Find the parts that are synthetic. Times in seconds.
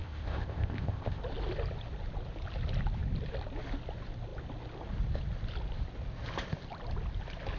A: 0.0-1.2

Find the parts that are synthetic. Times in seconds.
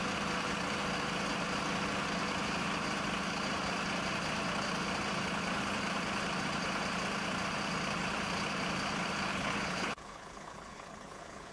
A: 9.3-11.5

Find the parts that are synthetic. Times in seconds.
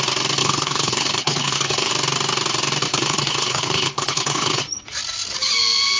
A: 0.4-1.9; 2.9-4.6